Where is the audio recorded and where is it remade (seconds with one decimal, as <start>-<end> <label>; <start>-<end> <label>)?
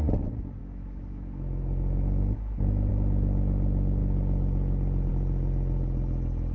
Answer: 0.0-0.6 recorded; 0.6-2.9 remade; 2.9-6.5 recorded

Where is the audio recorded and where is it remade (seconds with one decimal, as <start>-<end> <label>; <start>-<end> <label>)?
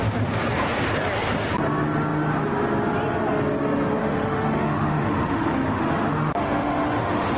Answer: 0.0-4.0 recorded; 4.0-7.4 remade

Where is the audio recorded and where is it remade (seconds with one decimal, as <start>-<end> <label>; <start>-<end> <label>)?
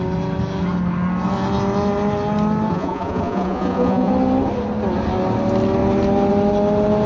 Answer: 0.0-2.7 recorded; 2.7-4.1 remade; 4.1-7.1 recorded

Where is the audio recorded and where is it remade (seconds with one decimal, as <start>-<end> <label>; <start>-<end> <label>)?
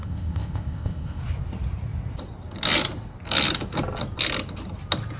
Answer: 0.0-1.2 remade; 1.2-5.2 recorded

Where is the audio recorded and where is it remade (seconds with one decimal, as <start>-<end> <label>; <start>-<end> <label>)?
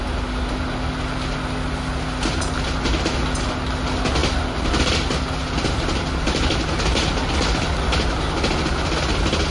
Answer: 0.0-9.5 recorded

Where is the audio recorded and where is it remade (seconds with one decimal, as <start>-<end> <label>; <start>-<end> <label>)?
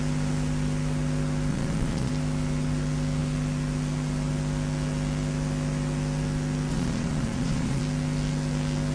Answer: 0.0-1.5 recorded; 1.5-2.1 remade; 2.1-6.7 recorded; 6.7-7.8 remade; 7.8-8.9 recorded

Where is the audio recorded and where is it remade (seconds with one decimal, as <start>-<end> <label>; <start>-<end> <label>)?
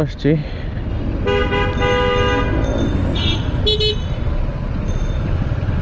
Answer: 0.0-5.8 recorded